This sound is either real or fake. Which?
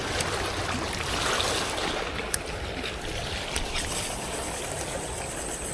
real